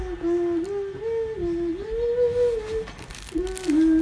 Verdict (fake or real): real